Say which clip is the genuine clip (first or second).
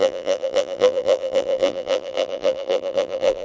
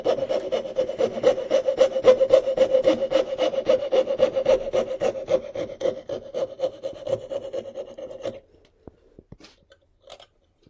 second